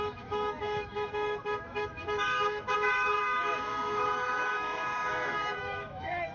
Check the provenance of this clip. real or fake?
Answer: fake